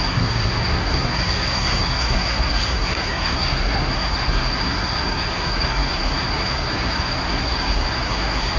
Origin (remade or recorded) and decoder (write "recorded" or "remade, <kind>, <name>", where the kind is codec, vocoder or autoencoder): remade, codec, SNAC